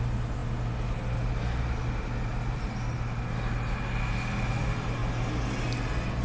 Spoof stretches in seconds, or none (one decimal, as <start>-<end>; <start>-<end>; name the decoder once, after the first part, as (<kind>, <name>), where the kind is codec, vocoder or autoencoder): none